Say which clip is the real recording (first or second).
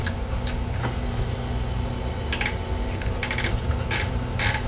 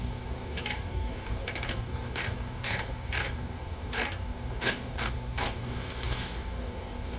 first